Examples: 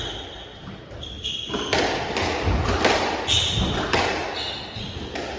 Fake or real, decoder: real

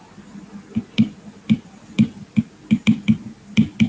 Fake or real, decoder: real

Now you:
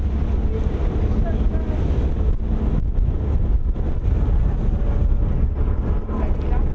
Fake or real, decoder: real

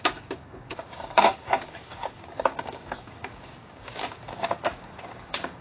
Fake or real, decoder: fake, codec, DAC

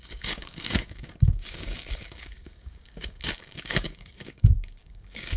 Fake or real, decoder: fake, codec, DAC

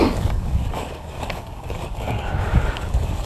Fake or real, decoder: fake, codec, DAC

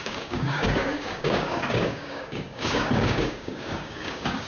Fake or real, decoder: fake, codec, DAC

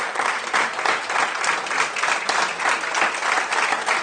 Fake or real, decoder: real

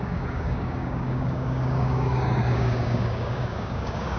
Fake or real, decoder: fake, codec, DAC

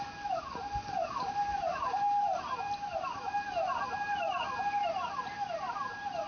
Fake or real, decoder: real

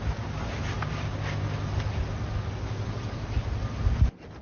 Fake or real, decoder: real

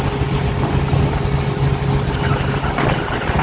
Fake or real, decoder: real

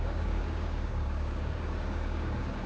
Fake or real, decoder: fake, codec, DAC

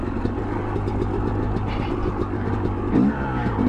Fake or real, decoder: real